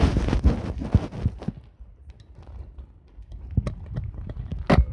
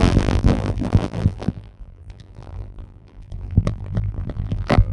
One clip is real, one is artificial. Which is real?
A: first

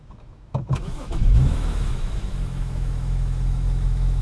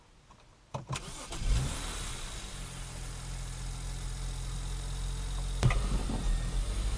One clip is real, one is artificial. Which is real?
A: second